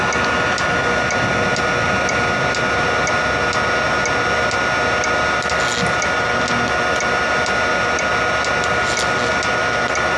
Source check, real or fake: real